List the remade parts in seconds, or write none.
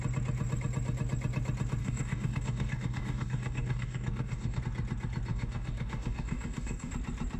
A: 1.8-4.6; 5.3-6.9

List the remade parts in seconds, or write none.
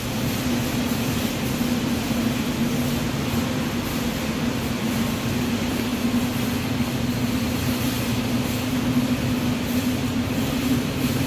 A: 10.0-11.3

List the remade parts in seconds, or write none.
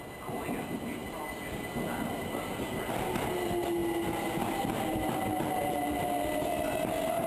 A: none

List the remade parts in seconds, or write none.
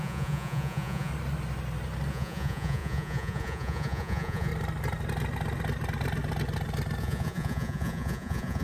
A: 0.0-1.1; 2.1-4.5; 7.0-8.6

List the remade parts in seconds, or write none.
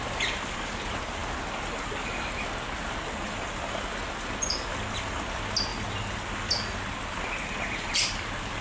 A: none